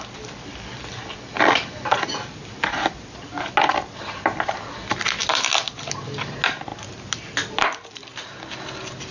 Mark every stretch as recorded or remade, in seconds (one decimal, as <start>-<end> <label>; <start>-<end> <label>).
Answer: 0.0-9.1 recorded